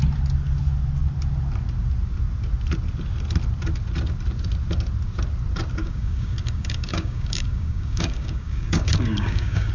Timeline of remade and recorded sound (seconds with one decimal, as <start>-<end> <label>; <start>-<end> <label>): 0.0-5.8 recorded; 5.8-9.7 remade